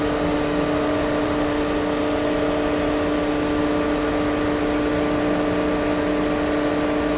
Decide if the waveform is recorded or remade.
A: recorded